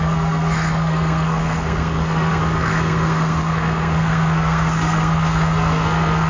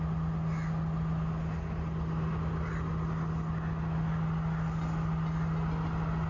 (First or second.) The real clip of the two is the second